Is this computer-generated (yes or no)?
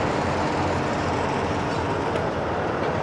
no